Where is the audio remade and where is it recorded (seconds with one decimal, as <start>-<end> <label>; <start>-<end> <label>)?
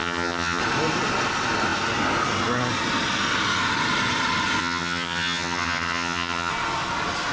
0.0-0.6 remade; 0.6-4.6 recorded; 4.6-6.5 remade; 6.5-7.3 recorded